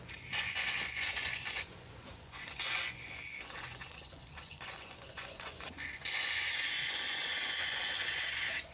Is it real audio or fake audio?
fake